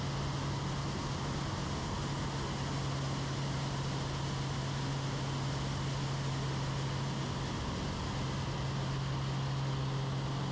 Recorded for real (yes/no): yes